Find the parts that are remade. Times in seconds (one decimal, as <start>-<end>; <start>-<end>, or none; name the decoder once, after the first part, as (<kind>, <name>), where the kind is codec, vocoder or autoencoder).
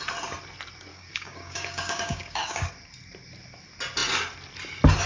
0.9-2.7 (codec, DAC)